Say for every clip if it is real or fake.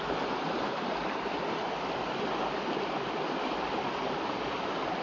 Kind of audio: fake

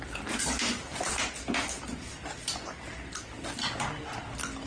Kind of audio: real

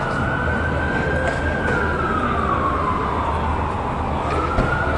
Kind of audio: real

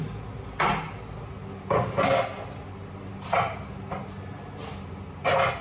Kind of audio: real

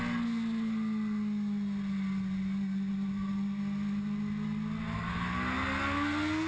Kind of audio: real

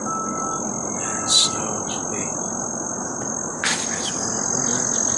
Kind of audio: real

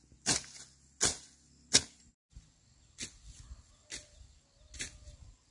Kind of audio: real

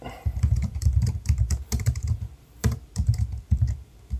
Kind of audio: fake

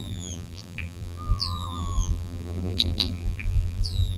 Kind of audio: fake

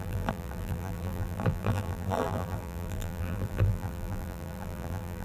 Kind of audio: fake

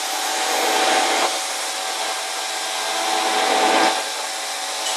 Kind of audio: real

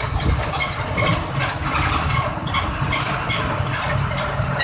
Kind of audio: real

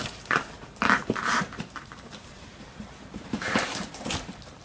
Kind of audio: fake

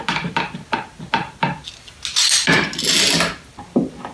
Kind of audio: real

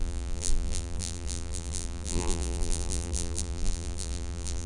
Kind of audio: fake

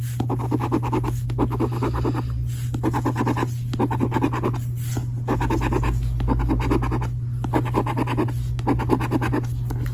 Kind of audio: real